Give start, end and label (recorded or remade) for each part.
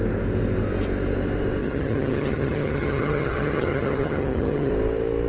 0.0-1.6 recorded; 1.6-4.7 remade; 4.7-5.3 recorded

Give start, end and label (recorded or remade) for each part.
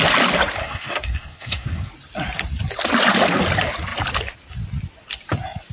0.0-0.6 recorded; 0.6-1.9 remade; 1.9-5.7 recorded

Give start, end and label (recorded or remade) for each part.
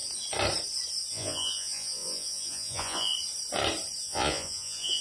0.0-1.1 recorded; 1.1-3.1 remade; 3.1-4.0 recorded; 4.0-5.0 remade